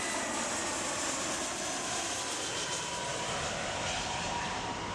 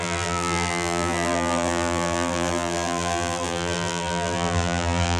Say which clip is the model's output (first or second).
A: second